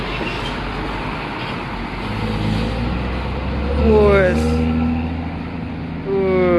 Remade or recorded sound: recorded